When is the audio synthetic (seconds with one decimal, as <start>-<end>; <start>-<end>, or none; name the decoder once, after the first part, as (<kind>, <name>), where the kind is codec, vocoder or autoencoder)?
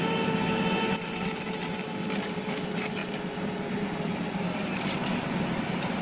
none